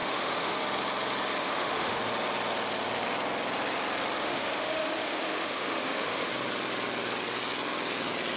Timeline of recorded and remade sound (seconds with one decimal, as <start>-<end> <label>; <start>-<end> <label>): 0.0-0.6 remade; 0.6-1.4 recorded; 1.4-2.0 remade; 2.0-4.2 recorded; 4.2-6.3 remade; 6.3-8.4 recorded